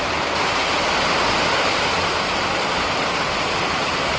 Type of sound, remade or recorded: recorded